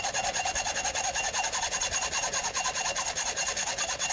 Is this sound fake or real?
real